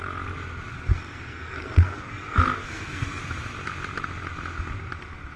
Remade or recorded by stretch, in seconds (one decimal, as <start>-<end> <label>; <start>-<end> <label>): 0.0-0.9 recorded; 0.9-3.2 remade; 3.2-5.4 recorded